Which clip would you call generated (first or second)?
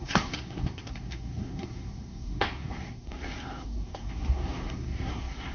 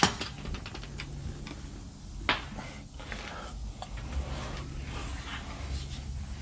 first